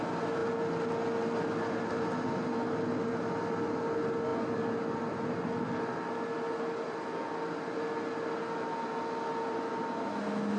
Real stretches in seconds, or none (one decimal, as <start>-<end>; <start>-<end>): 0.0-10.6

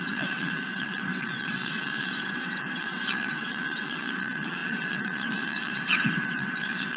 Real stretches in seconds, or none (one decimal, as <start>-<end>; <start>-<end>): none

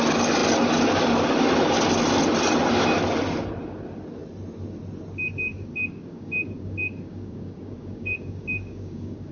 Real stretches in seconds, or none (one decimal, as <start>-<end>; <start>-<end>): 0.0-5.5

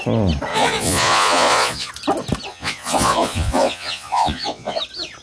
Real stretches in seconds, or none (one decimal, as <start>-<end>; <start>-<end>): 0.0-0.5; 1.9-2.5; 4.8-5.2

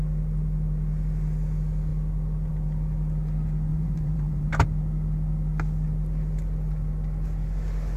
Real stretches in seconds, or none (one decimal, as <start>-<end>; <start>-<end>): 0.0-3.7; 4.5-8.0

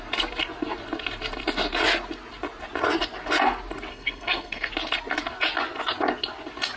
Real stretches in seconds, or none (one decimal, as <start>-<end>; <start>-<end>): 0.0-3.9; 4.7-6.8

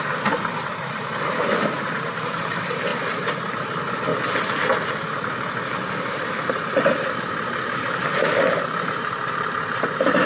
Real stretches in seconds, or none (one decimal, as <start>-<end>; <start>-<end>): 4.1-6.1

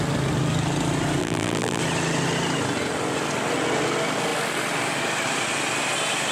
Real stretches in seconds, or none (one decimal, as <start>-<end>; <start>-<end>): 0.0-1.2; 1.8-6.3